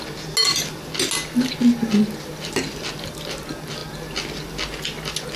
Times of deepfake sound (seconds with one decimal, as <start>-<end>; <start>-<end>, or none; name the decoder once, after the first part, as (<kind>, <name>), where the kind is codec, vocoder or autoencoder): none